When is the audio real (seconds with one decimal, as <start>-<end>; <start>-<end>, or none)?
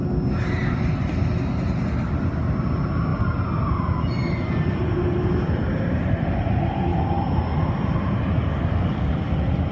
0.0-8.5; 9.1-9.7